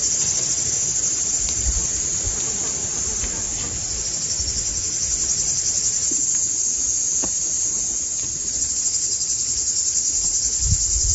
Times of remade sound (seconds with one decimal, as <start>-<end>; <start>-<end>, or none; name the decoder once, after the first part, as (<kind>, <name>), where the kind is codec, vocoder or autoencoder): none